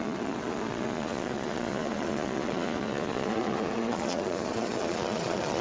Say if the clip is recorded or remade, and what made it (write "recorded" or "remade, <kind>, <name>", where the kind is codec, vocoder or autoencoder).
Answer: remade, vocoder, Vocos